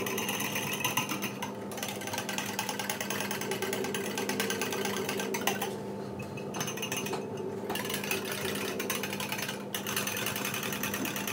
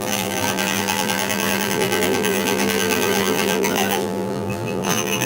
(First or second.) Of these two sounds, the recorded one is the first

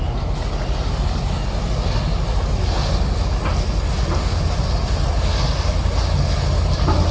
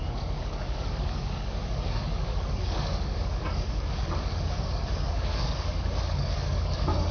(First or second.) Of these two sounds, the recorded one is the first